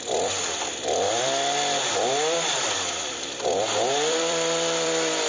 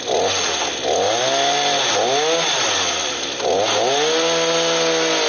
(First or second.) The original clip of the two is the second